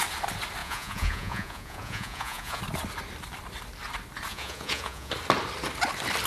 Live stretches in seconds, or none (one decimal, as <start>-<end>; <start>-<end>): 0.0-0.6; 2.6-4.3; 5.1-6.3

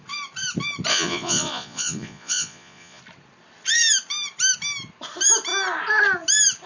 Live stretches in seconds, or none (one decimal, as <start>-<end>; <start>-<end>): 0.0-0.9; 3.0-6.7

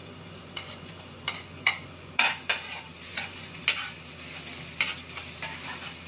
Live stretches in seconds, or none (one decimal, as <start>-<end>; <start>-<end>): 2.5-3.1; 3.6-6.1